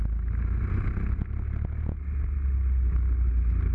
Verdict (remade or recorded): recorded